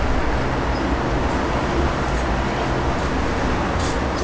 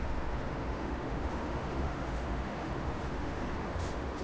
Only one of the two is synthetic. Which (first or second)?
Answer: second